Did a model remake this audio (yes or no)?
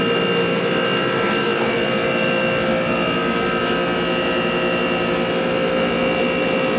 no